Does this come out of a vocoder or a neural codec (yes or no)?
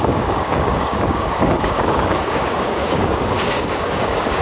yes